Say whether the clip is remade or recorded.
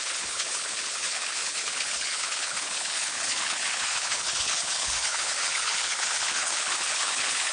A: remade